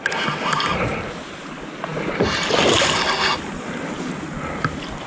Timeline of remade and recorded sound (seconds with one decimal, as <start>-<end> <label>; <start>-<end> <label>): 0.0-5.1 recorded